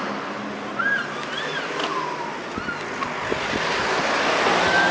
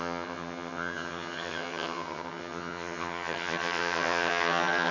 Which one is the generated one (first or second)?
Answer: second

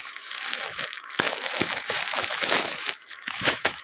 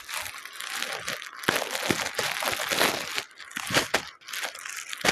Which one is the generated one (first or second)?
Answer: first